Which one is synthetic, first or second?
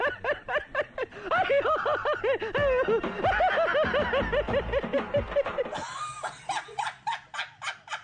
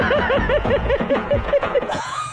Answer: second